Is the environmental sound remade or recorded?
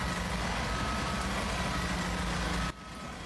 recorded